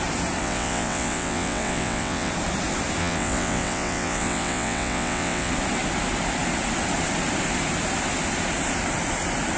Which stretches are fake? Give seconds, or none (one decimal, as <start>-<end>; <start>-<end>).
0.4-2.3; 3.0-5.5